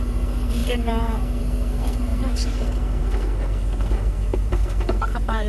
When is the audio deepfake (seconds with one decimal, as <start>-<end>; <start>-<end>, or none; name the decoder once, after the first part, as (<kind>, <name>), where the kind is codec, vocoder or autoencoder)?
0.0-5.5 (codec, SNAC)